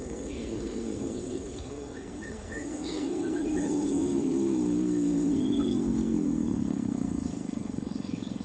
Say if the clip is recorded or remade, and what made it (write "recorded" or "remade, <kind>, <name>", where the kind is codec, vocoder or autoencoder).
remade, codec, SNAC